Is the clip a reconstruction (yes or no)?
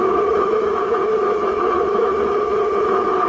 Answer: yes